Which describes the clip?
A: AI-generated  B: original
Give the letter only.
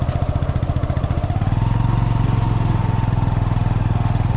B